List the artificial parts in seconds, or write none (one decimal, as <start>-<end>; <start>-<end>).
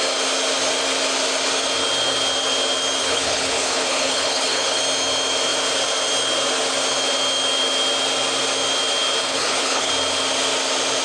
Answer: 3.0-4.8; 9.3-9.9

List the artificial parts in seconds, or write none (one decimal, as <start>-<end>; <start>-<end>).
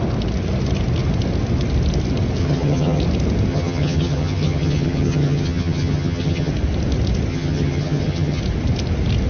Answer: 2.4-3.0; 3.5-6.5; 7.3-8.4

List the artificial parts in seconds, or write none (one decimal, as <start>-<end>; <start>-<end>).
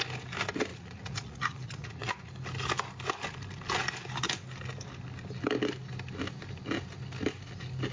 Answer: 0.7-2.3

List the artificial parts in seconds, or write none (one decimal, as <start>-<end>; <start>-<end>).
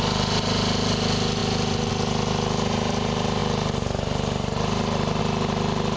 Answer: none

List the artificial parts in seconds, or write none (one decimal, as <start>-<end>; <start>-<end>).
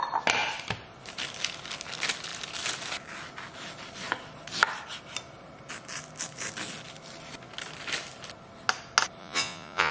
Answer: 9.2-9.9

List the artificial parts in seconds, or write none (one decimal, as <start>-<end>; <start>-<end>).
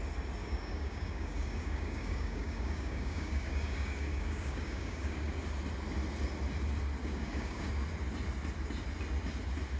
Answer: 0.4-5.4; 7.0-7.7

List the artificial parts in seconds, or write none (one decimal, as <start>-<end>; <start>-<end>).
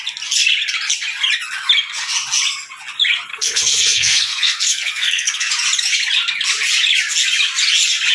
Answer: 3.3-5.5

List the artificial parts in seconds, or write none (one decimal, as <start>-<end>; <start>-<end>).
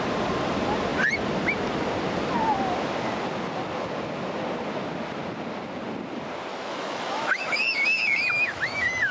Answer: 6.5-9.1